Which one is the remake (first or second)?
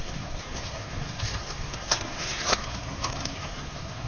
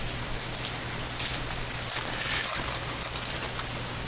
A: first